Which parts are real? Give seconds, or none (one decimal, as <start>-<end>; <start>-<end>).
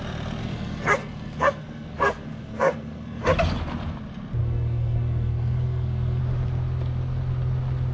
0.0-0.4; 3.2-4.4; 6.2-7.9